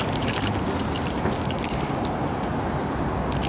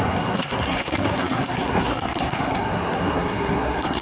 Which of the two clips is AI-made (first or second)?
second